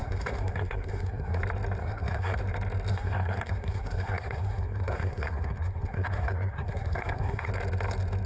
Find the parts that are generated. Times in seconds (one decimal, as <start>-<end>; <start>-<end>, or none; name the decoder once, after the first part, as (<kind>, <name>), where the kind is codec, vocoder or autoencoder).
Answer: 0.0-1.4 (codec, SNAC); 1.8-2.4; 2.9-7.5